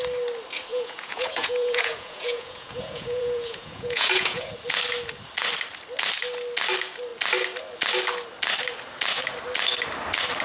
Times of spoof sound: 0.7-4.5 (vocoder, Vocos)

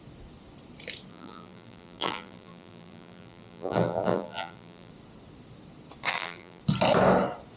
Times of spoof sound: 1.1-4.9 (vocoder, BigVGAN v2); 6.1-6.6

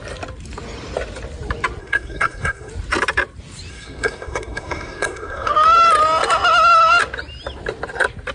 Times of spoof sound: 1.8-2.7 (codec, SNAC); 3.7-5.5

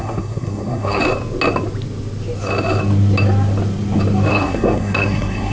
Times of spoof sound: 0.0-1.0 (codec, SNAC); 4.3-5.5

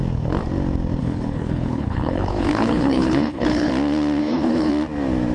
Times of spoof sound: 1.0-3.7 (codec, HILCodec); 4.2-4.7